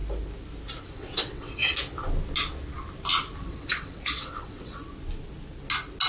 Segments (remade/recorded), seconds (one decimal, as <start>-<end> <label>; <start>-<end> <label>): 0.0-0.8 recorded; 0.8-1.6 remade; 1.6-3.5 recorded; 3.5-4.8 remade; 4.8-6.1 recorded

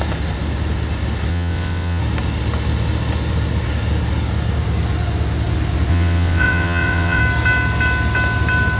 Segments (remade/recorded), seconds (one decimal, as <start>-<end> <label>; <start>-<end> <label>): 0.0-1.3 recorded; 1.3-2.0 remade; 2.0-5.9 recorded; 5.9-7.2 remade; 7.2-8.8 recorded

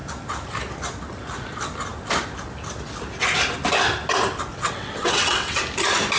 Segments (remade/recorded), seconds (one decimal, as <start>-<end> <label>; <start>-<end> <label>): 0.0-4.5 recorded; 4.5-5.6 remade; 5.6-6.2 recorded

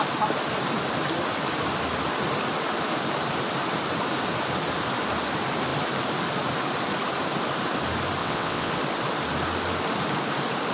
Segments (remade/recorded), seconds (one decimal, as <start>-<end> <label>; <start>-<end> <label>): 0.0-8.2 recorded; 8.2-8.7 remade; 8.7-10.7 recorded

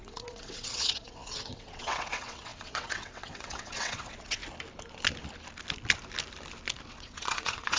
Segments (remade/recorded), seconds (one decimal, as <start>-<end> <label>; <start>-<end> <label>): 0.0-4.4 remade; 4.4-6.9 recorded; 6.9-7.8 remade